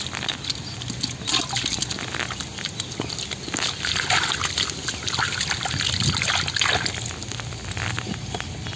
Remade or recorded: recorded